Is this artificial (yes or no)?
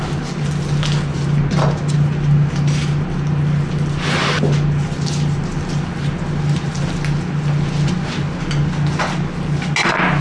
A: no